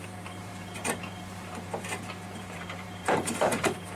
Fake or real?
fake